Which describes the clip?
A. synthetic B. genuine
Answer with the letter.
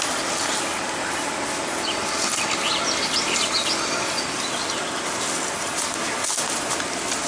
B